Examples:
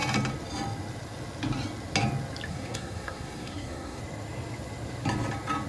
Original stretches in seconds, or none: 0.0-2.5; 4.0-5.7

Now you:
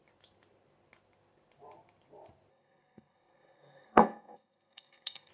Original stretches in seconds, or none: 0.0-2.5

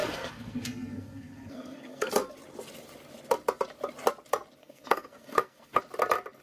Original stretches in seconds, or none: 2.1-4.6; 5.8-6.4

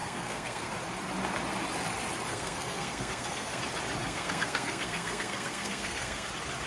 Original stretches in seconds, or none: 0.7-2.3; 3.6-4.0; 6.3-6.7

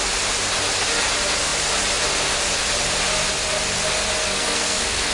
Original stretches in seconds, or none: 0.0-4.2

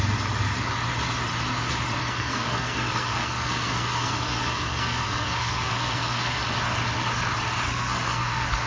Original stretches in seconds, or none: 0.0-2.0; 6.4-7.7

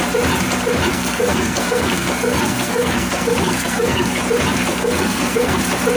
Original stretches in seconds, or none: 0.0-0.9; 4.2-4.7; 5.6-6.0

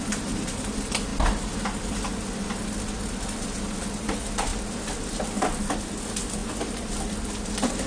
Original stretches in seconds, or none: 0.0-7.9